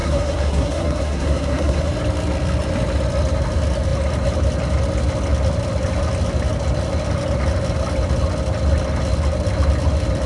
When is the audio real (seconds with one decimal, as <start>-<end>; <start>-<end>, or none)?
1.9-10.3